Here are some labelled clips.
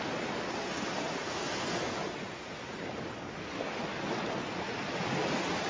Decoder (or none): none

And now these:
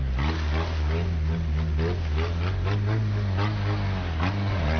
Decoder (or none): none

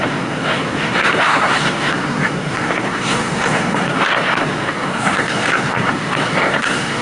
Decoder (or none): codec, SNAC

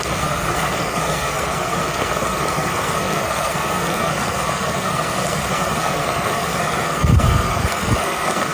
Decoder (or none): codec, SNAC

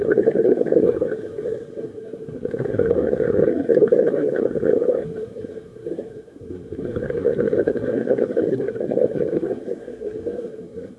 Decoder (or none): codec, SNAC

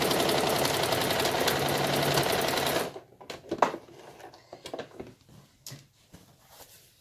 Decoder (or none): none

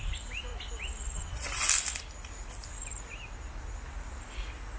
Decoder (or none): none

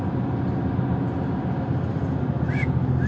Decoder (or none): none